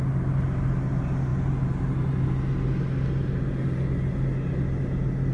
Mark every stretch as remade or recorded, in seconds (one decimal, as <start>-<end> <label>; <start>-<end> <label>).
0.0-5.3 recorded